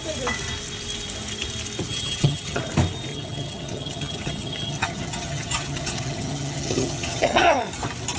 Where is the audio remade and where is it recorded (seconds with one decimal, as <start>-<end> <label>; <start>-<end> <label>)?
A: 0.0-1.9 recorded; 1.9-2.6 remade; 2.6-3.1 recorded; 3.1-7.6 remade; 7.6-8.2 recorded